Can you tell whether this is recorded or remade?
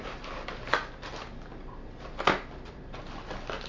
recorded